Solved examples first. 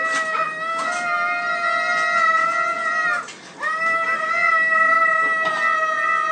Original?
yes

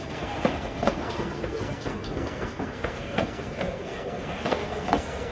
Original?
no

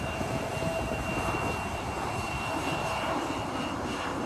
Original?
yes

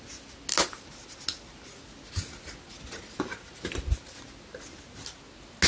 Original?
yes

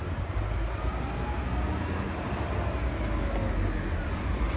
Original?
yes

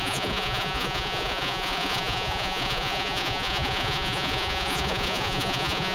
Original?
no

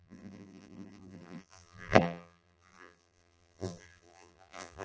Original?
no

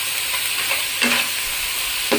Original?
yes